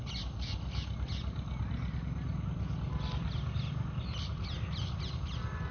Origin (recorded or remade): recorded